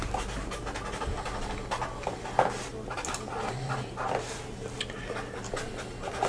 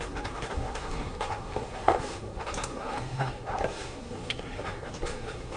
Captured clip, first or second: first